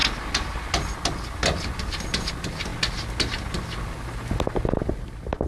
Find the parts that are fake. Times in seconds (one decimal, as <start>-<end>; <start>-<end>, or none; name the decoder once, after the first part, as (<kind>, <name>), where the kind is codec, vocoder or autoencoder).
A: none